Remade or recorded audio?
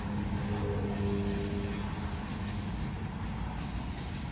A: recorded